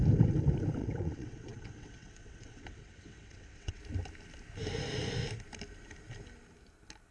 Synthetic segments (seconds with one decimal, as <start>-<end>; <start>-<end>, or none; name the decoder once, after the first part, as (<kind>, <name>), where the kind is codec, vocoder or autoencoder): 0.8-3.8 (vocoder, WaveNeXt)